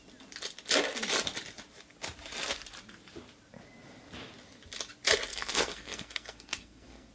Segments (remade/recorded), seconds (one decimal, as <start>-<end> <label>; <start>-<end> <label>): 0.0-5.3 recorded; 5.3-7.1 remade